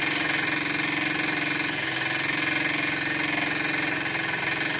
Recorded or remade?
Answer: recorded